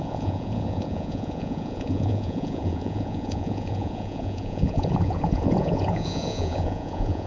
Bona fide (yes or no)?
no